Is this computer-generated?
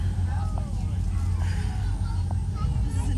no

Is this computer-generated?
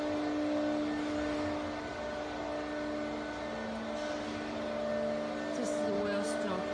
no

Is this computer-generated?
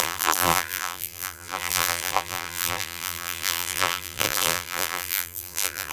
yes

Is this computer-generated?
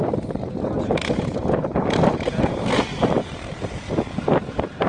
yes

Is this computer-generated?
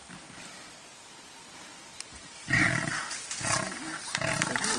no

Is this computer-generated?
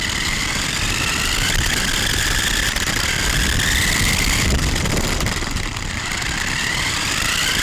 yes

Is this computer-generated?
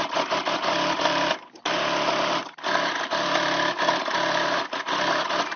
no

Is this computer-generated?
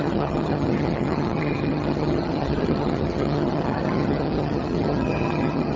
yes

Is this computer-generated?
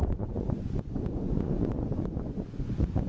yes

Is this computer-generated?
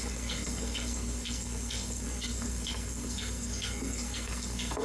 yes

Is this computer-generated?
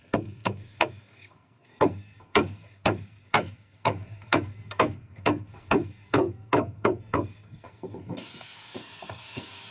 yes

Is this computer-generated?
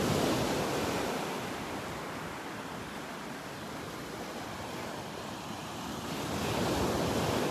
no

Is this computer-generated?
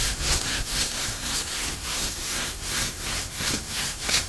yes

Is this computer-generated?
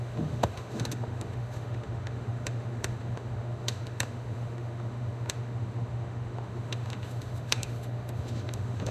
yes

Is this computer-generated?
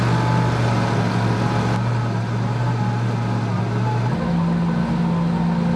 no